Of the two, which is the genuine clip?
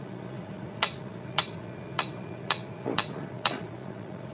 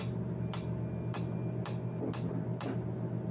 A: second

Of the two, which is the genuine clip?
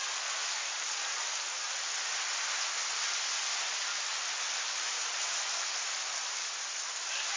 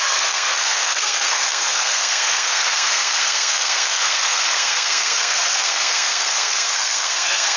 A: first